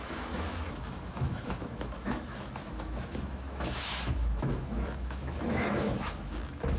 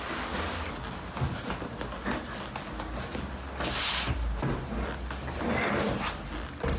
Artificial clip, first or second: first